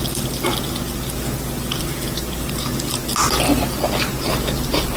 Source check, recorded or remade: recorded